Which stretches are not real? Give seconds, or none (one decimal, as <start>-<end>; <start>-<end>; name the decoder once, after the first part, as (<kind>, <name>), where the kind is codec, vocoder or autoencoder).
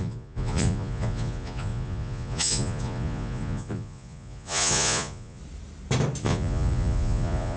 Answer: 0.0-5.4 (vocoder, Vocos); 6.2-7.6